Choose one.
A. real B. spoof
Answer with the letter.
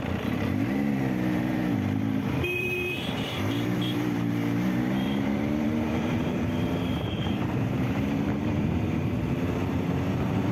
B